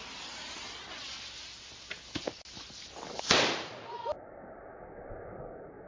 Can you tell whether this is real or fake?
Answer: real